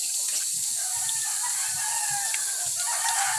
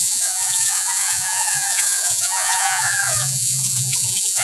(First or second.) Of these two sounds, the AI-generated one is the second